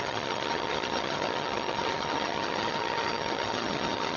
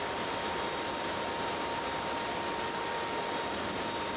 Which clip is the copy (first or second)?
first